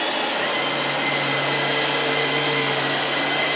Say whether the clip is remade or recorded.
recorded